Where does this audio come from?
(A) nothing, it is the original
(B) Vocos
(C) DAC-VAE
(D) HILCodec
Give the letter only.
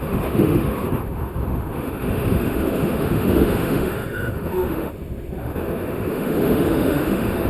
C